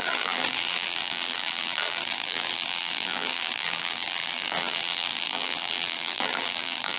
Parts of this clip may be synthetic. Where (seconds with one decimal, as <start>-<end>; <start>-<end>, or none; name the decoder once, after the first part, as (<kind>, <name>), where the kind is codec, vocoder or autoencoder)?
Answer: 0.0-7.0 (vocoder, BigVGAN v2)